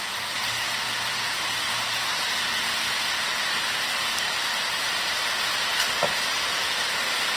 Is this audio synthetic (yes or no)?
no